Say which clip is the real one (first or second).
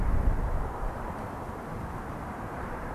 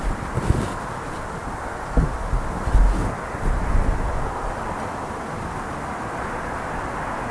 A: second